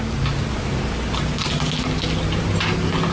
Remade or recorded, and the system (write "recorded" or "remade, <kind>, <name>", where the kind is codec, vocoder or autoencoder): recorded